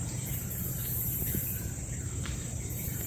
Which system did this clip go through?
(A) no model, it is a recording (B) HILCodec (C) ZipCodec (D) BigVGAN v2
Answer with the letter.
D